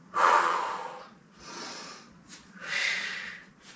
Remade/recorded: remade